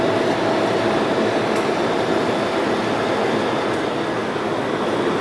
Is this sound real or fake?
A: real